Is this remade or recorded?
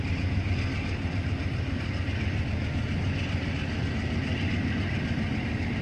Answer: recorded